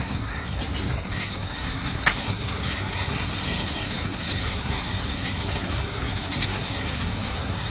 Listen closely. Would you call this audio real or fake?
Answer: fake